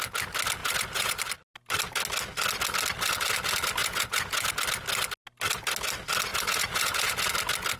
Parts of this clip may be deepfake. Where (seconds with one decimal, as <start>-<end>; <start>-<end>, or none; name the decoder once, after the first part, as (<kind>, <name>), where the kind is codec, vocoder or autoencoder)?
0.6-1.2 (vocoder, Vocos); 3.8-4.5; 6.3-7.3